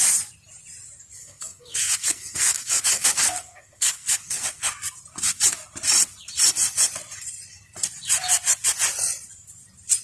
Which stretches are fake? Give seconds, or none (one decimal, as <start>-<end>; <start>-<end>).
1.2-4.7